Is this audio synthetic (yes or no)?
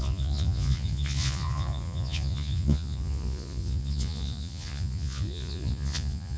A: yes